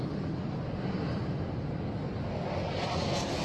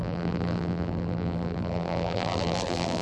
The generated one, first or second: second